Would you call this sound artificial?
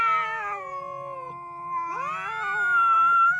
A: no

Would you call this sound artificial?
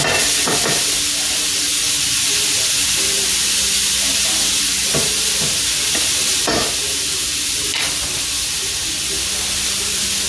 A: no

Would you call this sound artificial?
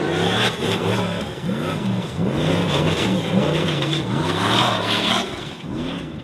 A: yes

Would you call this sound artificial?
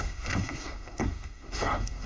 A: yes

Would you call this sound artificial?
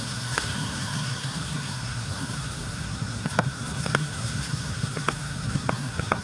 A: yes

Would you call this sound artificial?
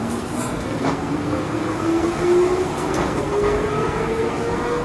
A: yes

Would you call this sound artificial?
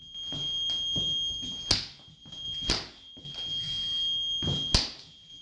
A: no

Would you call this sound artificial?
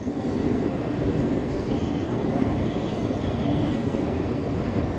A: yes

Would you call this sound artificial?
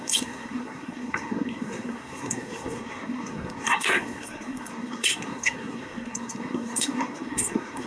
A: yes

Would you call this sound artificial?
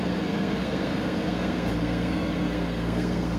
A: yes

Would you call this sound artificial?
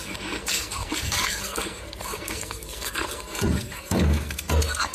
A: yes